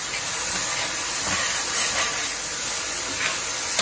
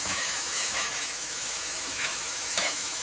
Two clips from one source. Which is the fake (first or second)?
second